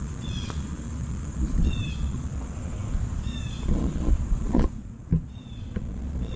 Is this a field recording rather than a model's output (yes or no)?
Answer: no